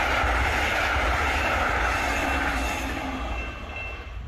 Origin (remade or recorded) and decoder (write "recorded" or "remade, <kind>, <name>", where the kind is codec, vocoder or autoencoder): recorded